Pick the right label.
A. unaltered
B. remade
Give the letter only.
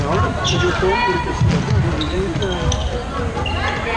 A